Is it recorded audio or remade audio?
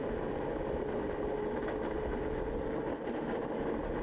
recorded